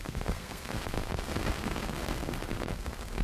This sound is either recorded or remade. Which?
remade